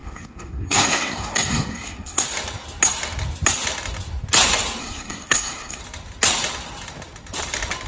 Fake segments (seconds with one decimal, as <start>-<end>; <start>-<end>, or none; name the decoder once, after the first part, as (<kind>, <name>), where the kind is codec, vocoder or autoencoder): 0.0-2.2 (codec, SNAC); 4.8-5.8

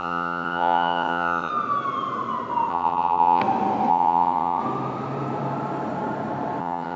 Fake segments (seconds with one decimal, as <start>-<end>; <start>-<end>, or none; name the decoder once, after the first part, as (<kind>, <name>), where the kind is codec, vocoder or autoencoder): 0.0-1.5 (vocoder, HiFi-GAN); 2.7-3.4; 3.9-4.6; 6.6-7.0

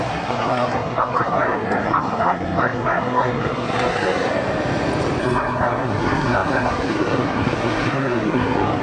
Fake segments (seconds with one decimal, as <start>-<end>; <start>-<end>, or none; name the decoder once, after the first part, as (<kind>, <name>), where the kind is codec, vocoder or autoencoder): 0.0-4.3 (codec, SNAC); 5.2-8.8

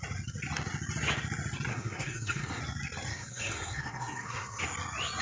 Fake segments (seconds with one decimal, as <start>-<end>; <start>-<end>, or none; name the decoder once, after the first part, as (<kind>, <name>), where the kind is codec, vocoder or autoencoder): 1.7-2.6 (codec, SNAC); 3.1-4.6

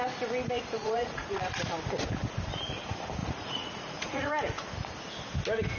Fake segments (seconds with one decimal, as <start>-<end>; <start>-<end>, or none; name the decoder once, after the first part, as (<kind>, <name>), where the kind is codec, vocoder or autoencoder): 0.8-1.4 (vocoder, Vocos); 3.2-4.3

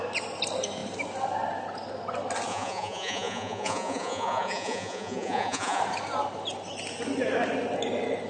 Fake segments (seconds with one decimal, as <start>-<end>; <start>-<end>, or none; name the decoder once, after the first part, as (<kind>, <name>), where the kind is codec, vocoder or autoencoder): 2.5-5.8 (vocoder, Vocos)